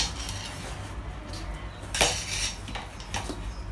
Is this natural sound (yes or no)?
yes